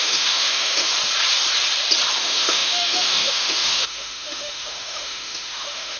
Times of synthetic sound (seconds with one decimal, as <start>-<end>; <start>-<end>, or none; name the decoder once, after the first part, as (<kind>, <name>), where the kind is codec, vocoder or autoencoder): 0.0-0.9 (autoencoder, DAC-VAE); 2.2-6.0